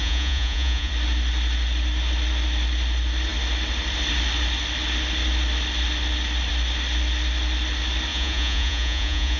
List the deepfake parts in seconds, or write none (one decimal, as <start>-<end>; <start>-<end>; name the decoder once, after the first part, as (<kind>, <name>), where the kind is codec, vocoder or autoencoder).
0.0-0.9 (vocoder, Vocos); 8.1-9.4